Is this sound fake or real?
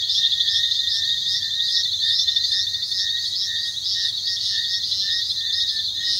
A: real